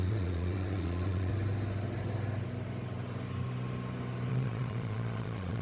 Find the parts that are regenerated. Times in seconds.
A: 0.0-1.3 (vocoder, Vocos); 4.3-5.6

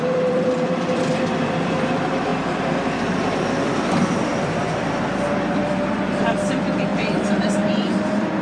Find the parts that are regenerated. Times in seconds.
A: 0.0-8.4 (vocoder, BigVGAN v2)